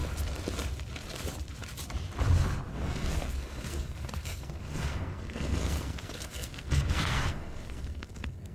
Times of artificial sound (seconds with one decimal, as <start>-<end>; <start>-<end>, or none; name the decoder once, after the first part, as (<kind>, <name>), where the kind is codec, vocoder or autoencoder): 2.7-8.5 (codec, SNAC)